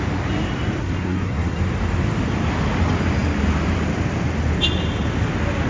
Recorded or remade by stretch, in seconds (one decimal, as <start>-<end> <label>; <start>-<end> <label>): 0.0-0.8 recorded; 0.8-1.6 remade; 1.6-5.7 recorded